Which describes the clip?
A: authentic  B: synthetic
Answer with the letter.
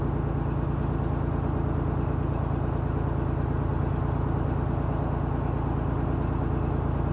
A